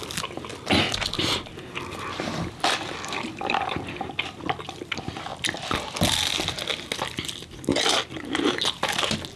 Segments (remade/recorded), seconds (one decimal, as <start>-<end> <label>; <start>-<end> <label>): 0.0-9.4 recorded